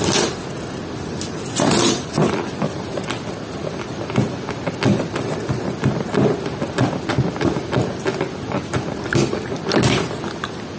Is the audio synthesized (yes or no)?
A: no